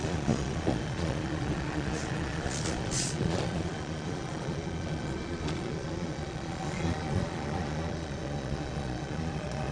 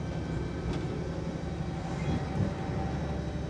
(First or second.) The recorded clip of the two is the second